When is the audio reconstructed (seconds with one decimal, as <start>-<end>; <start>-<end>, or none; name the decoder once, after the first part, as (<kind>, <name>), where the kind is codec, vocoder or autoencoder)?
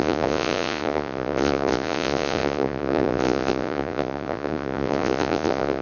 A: 0.0-5.8 (vocoder, Vocos)